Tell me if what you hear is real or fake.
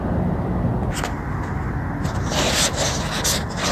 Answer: real